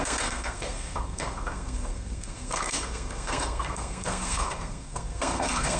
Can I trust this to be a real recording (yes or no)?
no